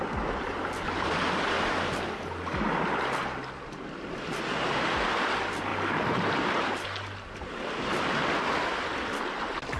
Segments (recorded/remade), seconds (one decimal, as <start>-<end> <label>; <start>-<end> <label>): 0.0-9.8 recorded